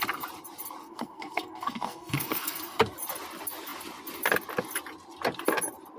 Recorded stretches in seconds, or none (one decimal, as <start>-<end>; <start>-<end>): 0.0-0.8; 2.8-6.0